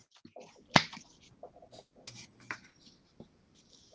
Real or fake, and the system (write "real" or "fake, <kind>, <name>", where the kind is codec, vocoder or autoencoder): real